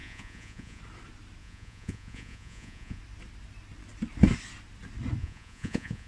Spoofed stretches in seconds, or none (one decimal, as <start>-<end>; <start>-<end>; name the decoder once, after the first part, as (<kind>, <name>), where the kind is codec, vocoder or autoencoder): 0.0-0.8 (vocoder, Vocos); 1.4-3.0; 5.2-6.1